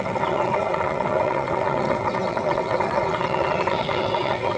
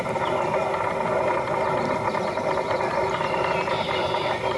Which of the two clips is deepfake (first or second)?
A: first